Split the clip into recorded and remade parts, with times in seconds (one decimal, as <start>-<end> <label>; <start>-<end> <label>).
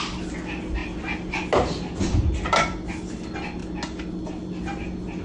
0.0-5.2 recorded